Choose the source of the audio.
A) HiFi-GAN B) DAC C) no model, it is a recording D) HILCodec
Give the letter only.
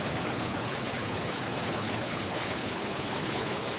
D